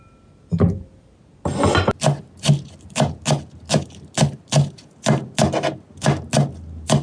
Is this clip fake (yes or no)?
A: no